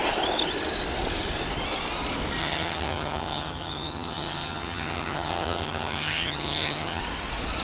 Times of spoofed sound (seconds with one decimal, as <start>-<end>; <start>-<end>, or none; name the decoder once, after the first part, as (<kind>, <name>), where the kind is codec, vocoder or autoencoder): 2.4-7.0 (vocoder, HiFi-GAN)